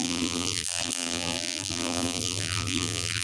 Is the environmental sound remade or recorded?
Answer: remade